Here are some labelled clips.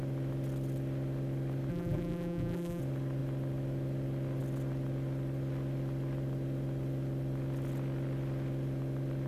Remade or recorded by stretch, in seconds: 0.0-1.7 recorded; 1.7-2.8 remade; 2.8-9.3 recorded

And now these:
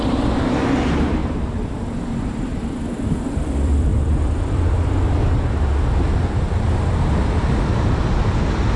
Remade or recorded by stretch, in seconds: 0.0-1.2 remade; 1.2-1.8 recorded; 1.8-3.9 remade; 3.9-4.4 recorded; 4.4-5.2 remade; 5.2-8.0 recorded; 8.0-8.8 remade

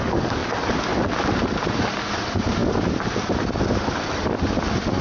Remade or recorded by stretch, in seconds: 0.0-0.4 recorded; 0.4-1.1 remade; 1.1-2.6 recorded; 2.6-5.0 remade